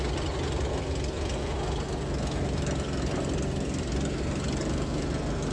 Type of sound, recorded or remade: recorded